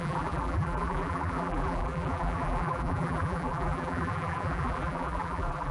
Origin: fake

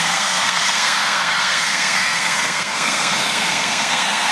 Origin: fake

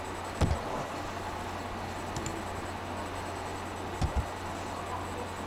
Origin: real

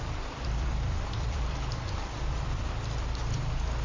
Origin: fake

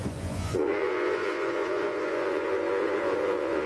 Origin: fake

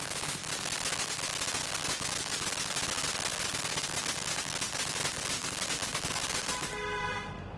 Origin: real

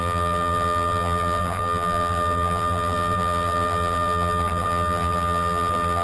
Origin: fake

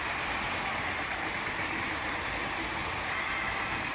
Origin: real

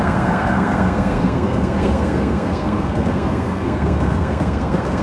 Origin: fake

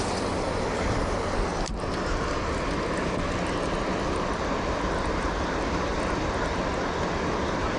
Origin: real